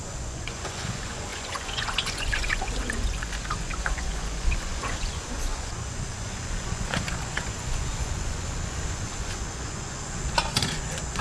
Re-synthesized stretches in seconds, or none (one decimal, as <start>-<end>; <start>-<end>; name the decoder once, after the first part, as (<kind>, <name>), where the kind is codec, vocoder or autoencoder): 0.0-11.2 (vocoder, Vocos)